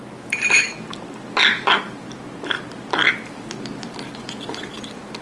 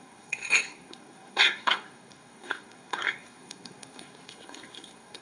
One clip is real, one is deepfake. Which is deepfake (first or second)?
second